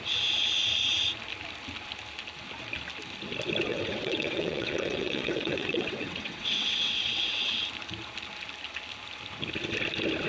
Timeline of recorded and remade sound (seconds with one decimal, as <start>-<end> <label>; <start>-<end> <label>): 0.0-3.7 recorded; 3.7-7.5 remade; 7.5-10.3 recorded